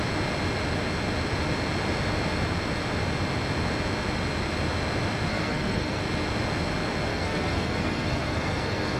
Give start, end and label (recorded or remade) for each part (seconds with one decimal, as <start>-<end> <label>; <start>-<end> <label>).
0.0-5.3 recorded; 5.3-6.0 remade; 6.0-7.1 recorded; 7.1-9.0 remade